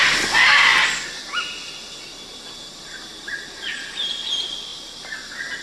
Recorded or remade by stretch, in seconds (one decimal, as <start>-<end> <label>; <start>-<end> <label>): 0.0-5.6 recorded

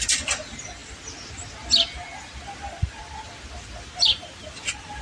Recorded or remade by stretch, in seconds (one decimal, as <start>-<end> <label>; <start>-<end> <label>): 0.0-5.0 recorded

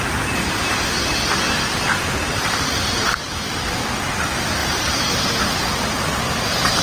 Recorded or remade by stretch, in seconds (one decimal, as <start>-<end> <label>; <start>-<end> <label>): 0.0-2.3 recorded; 2.3-3.7 remade; 3.7-4.6 recorded; 4.6-5.2 remade; 5.2-6.8 recorded